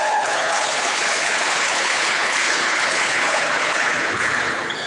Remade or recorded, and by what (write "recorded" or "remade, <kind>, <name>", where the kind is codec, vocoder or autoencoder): remade, codec, HILCodec